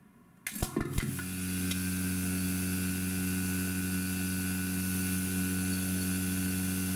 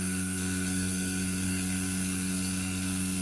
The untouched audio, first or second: first